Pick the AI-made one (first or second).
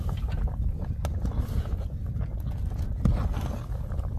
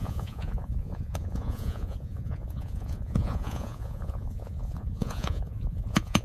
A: second